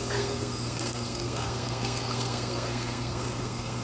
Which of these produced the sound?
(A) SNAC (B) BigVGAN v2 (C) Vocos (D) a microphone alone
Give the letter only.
A